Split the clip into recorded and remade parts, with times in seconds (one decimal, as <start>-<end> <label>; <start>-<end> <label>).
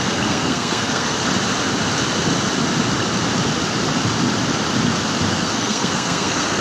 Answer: 0.0-1.3 remade; 1.3-5.3 recorded; 5.3-6.6 remade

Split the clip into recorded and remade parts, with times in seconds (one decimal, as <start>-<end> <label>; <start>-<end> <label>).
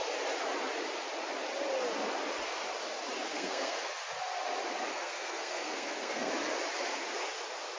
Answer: 0.0-3.3 recorded; 3.3-4.0 remade; 4.0-4.9 recorded; 4.9-6.3 remade; 6.3-7.8 recorded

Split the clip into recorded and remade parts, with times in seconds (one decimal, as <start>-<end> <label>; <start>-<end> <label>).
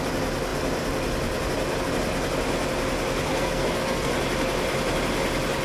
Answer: 0.0-3.3 recorded; 3.3-4.1 remade; 4.1-5.6 recorded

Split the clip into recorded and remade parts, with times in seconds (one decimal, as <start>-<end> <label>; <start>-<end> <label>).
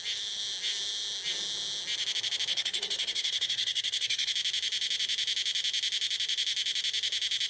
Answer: 0.0-2.5 recorded; 2.5-4.3 remade; 4.3-7.5 recorded